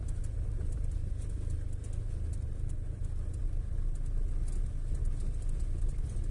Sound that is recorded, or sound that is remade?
recorded